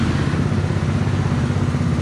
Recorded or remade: recorded